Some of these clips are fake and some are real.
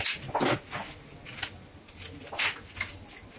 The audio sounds real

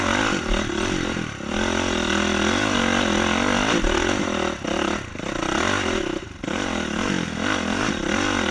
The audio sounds real